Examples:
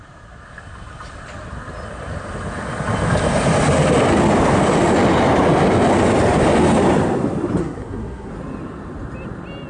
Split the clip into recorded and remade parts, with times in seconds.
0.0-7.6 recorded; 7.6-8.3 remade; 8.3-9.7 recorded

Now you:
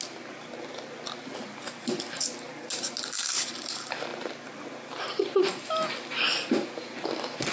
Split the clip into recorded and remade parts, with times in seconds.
0.0-7.5 recorded

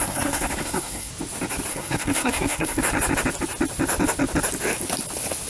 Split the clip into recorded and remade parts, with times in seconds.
0.0-1.1 remade; 1.1-1.7 recorded; 1.7-2.8 remade; 2.8-5.5 recorded

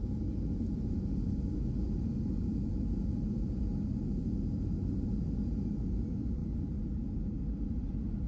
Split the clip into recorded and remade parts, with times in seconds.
0.0-8.3 recorded

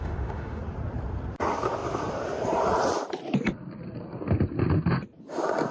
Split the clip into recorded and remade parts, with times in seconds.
0.0-0.6 remade; 0.6-5.7 recorded